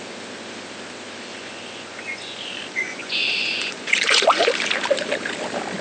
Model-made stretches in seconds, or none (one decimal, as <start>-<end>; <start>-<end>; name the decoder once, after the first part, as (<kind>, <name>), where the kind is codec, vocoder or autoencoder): 1.3-4.5 (vocoder, Vocos)